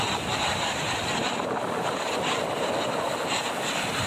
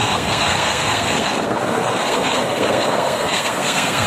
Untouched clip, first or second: first